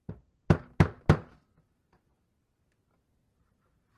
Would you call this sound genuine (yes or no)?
yes